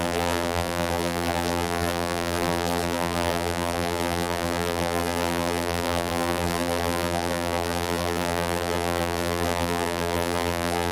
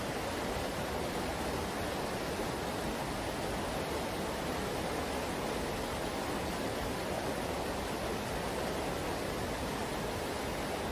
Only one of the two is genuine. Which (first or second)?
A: second